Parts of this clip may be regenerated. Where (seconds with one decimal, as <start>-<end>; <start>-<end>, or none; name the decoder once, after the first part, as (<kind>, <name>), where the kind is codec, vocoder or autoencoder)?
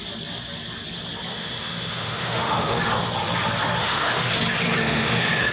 1.3-2.8 (autoencoder, DAC-VAE); 3.8-4.3; 4.8-5.5